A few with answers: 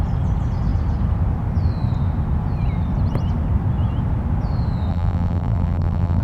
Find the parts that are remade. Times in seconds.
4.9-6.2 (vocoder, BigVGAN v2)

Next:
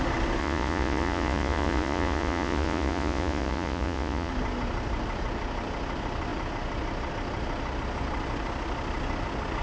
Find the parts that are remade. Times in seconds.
0.4-4.3 (vocoder, Vocos)

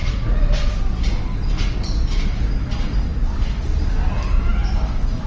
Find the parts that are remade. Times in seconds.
none

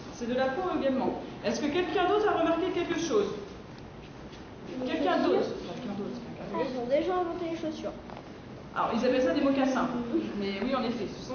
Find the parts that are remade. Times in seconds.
none

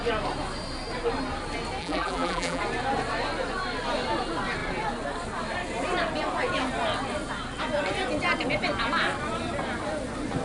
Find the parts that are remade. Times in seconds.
1.8-2.6 (vocoder, BigVGAN v2)

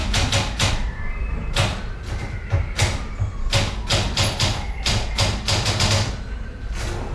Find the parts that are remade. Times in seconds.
none

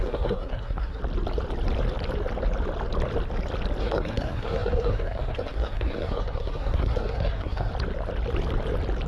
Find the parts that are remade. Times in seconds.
0.0-1.0 (codec, SNAC); 3.8-7.7

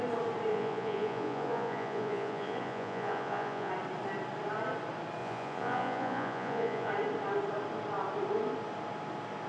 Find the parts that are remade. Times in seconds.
0.5-3.7 (vocoder, Vocos); 5.2-6.9